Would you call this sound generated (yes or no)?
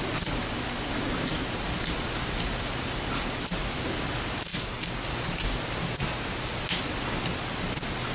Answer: no